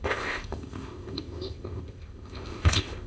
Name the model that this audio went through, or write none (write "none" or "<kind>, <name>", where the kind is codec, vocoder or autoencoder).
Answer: codec, ZipCodec